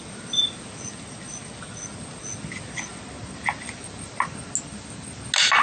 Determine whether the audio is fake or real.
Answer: real